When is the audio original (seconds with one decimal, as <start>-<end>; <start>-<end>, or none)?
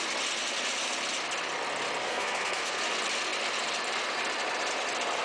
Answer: 0.0-2.0; 2.8-5.2